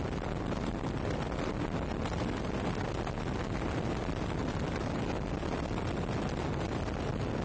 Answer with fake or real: real